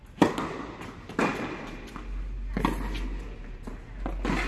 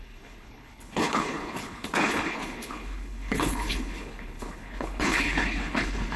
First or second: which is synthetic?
second